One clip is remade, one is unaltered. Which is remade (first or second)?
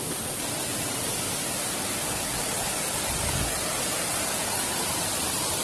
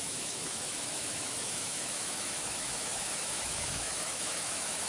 second